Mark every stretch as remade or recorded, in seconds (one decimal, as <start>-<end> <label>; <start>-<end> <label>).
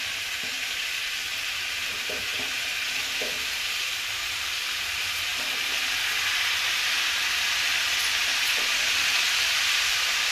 0.0-5.3 remade; 5.3-6.9 recorded; 6.9-7.7 remade; 7.7-8.9 recorded; 8.9-10.3 remade